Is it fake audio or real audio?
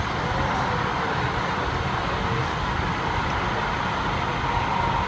real